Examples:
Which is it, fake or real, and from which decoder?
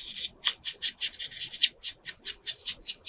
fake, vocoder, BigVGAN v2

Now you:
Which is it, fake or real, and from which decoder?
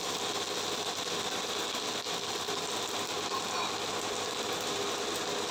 real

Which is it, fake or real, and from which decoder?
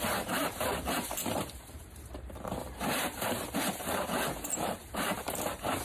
fake, vocoder, BigVGAN v2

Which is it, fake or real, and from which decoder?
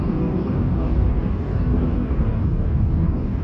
fake, codec, DAC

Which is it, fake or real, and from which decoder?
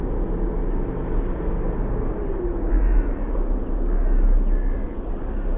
real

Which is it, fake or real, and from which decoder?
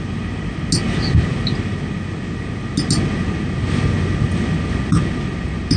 real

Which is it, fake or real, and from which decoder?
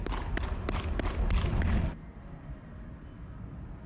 real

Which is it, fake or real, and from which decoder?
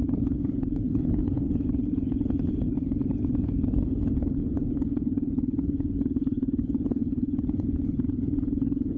fake, codec, HILCodec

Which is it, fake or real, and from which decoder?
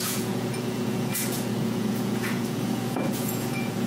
fake, vocoder, Vocos